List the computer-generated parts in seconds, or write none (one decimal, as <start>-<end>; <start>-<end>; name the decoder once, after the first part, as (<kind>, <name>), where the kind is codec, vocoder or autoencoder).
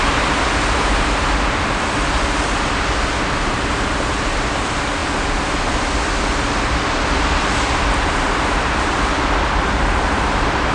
none